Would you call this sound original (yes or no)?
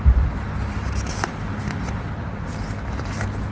yes